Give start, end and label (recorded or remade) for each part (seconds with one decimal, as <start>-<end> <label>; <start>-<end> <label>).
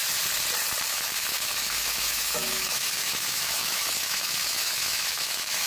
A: 0.0-0.9 recorded; 0.9-5.7 remade